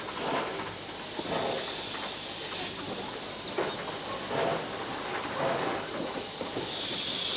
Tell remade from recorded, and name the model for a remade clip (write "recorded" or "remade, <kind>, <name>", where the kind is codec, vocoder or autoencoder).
recorded